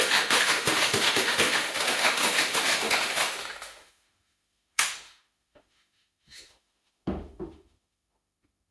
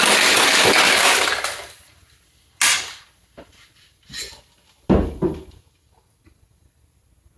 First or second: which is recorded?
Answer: second